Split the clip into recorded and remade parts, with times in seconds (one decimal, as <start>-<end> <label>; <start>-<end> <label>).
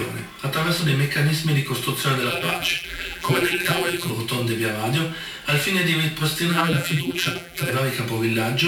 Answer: 0.0-2.3 recorded; 2.3-4.1 remade; 4.1-6.5 recorded; 6.5-7.7 remade; 7.7-8.7 recorded